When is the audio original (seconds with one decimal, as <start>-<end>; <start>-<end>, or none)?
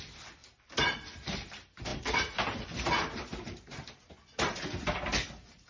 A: 0.0-0.4; 1.1-1.9; 4.1-5.7